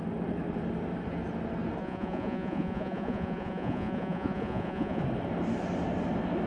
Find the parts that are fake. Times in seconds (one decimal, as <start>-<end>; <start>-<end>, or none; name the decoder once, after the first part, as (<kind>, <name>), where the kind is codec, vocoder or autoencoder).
1.8-5.0 (vocoder, Vocos)